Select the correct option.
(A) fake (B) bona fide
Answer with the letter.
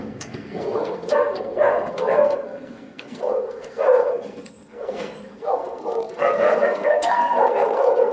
A